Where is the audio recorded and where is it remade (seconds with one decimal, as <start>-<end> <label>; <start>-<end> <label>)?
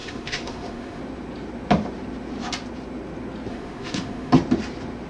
0.0-1.0 remade; 1.0-3.5 recorded; 3.5-4.3 remade; 4.3-5.1 recorded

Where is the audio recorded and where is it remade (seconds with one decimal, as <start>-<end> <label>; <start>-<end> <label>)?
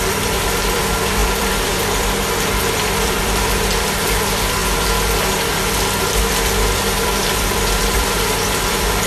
0.0-4.6 remade; 4.6-6.0 recorded; 6.0-9.1 remade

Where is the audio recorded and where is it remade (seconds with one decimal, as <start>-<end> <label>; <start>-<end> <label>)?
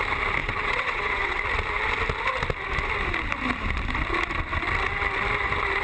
0.0-0.4 recorded; 0.4-1.4 remade; 1.4-5.8 recorded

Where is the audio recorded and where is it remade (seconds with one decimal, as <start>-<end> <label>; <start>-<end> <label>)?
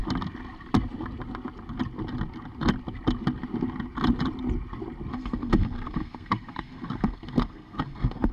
0.0-5.1 recorded; 5.1-8.3 remade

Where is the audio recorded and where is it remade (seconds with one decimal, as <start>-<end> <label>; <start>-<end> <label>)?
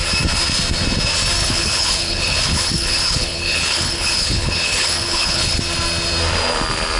0.0-1.4 recorded; 1.4-5.6 remade; 5.6-7.0 recorded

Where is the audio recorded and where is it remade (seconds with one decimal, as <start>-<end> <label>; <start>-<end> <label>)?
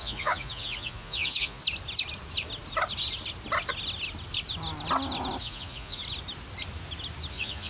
0.0-1.6 remade; 1.6-5.4 recorded; 5.4-6.0 remade; 6.0-7.3 recorded; 7.3-7.7 remade